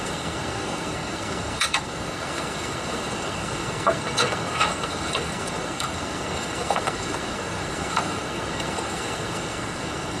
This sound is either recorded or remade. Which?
remade